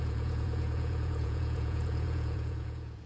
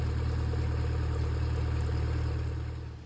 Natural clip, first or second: second